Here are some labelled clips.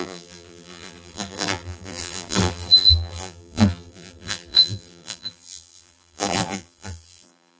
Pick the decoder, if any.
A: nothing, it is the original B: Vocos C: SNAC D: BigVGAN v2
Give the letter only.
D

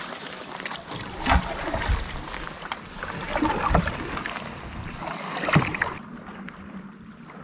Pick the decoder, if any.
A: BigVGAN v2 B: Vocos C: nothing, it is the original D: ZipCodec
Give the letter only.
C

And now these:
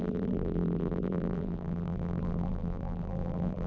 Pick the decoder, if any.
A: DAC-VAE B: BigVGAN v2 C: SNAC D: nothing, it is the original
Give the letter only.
B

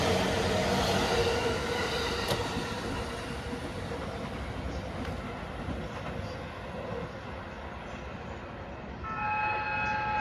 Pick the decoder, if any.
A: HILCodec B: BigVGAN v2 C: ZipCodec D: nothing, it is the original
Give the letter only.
D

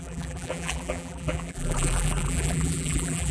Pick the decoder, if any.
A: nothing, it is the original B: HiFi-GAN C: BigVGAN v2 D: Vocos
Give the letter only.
C